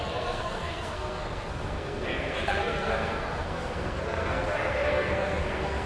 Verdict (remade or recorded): remade